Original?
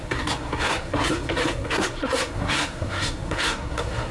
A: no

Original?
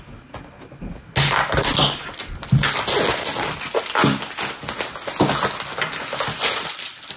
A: yes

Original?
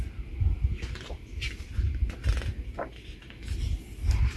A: yes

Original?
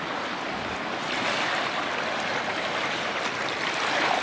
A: yes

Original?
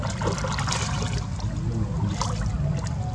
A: yes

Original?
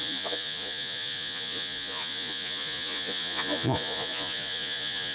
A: no